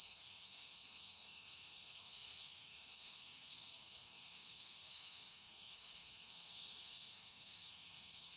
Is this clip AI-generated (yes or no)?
yes